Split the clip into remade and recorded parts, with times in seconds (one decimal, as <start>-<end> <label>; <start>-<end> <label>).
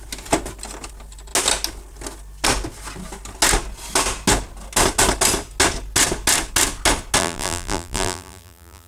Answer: 0.0-7.2 recorded; 7.2-8.9 remade